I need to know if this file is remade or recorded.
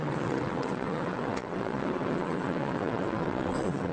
remade